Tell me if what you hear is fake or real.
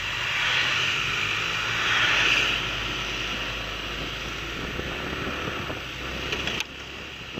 real